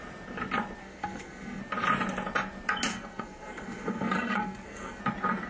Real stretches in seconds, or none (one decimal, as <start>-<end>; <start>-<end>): 0.0-0.8; 1.6-2.9; 5.0-5.5